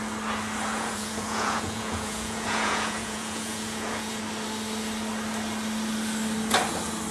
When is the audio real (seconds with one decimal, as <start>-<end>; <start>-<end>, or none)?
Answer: 0.0-0.7; 4.2-7.1